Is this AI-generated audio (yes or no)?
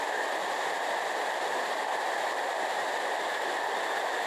no